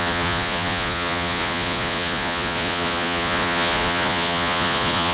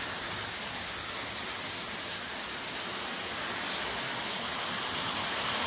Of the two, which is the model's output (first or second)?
first